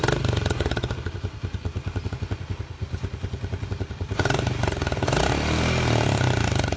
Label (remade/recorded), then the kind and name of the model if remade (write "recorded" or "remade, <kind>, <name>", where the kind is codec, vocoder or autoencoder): recorded